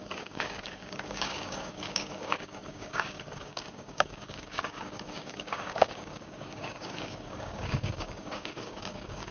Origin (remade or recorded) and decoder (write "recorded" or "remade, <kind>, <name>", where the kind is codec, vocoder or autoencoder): remade, codec, DAC